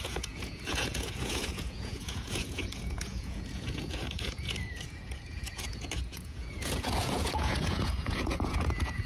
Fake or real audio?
fake